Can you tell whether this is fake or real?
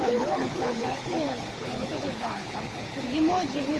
fake